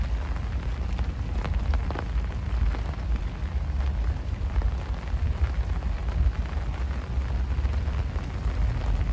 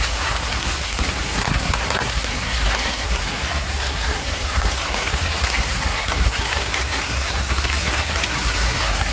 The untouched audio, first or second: first